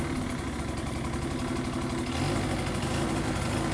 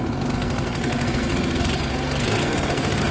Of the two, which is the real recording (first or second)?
first